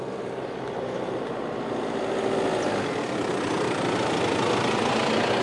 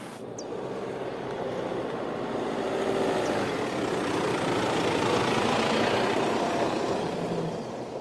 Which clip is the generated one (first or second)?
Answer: second